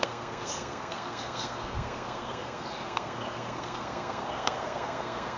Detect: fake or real fake